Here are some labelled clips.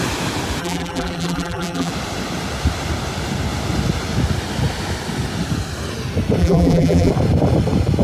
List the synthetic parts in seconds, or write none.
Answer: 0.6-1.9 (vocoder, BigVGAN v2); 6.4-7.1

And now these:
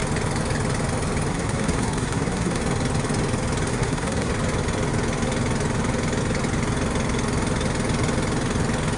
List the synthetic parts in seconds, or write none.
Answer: 1.3-2.6 (codec, SNAC); 3.7-4.3

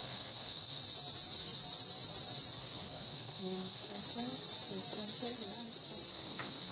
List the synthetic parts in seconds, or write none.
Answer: 0.0-0.8 (codec, SNAC); 2.6-4.0; 6.1-6.7

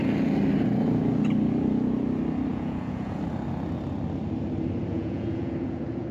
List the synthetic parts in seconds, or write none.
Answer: 2.5-3.2 (vocoder, Vocos); 4.9-6.1

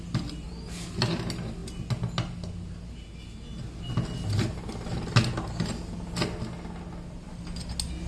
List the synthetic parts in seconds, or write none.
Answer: none

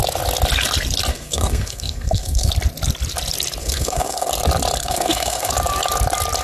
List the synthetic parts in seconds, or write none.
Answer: 1.1-2.5 (codec, SNAC); 3.6-4.3; 4.8-5.5

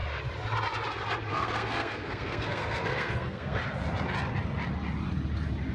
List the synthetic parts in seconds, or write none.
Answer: 1.3-3.6 (codec, SNAC)